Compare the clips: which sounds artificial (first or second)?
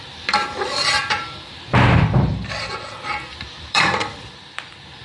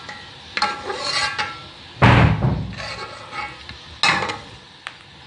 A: first